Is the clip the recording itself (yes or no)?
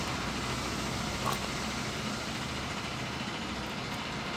yes